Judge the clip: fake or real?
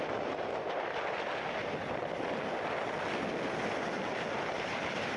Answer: real